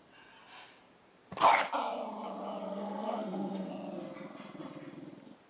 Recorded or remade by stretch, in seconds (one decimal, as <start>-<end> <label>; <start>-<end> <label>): 0.0-2.6 recorded; 2.6-3.7 remade; 3.7-5.5 recorded